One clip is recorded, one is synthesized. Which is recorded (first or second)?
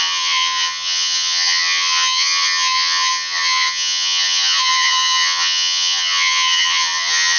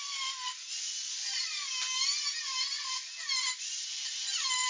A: second